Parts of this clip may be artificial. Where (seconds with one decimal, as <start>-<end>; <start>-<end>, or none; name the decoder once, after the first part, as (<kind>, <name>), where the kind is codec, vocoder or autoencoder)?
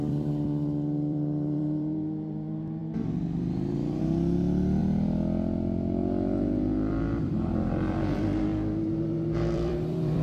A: 0.0-2.8 (vocoder, BigVGAN v2); 4.0-4.8; 6.9-8.5; 9.2-10.2